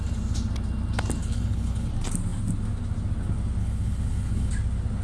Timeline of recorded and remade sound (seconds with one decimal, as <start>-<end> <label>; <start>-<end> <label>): 0.0-1.2 recorded; 1.2-1.9 remade; 1.9-3.6 recorded; 3.6-4.5 remade; 4.5-5.0 recorded